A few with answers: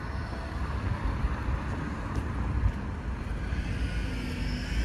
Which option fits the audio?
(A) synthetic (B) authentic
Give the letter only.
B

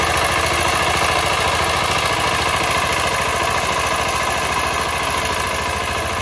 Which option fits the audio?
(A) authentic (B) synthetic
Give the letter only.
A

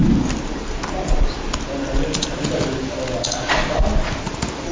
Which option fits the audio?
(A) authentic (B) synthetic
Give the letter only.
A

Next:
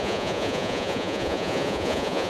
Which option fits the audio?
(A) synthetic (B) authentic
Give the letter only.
A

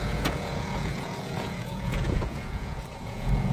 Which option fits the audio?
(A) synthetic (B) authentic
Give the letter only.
A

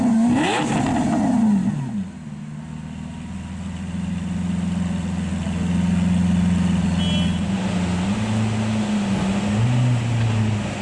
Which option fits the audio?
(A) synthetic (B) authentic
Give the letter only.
B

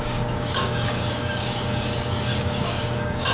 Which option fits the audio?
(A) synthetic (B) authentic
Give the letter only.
A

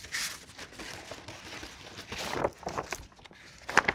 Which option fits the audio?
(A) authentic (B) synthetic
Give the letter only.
A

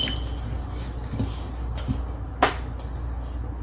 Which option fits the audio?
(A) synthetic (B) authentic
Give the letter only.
B